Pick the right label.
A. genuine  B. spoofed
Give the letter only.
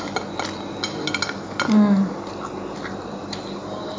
A